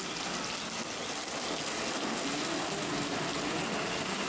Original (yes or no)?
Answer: yes